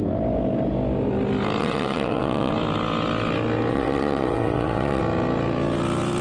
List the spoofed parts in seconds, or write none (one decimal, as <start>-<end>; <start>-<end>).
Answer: 1.6-2.5; 3.7-5.0